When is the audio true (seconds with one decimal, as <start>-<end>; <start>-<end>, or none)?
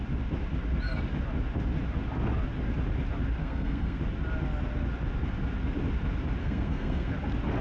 0.0-3.4; 4.0-6.4; 7.1-7.6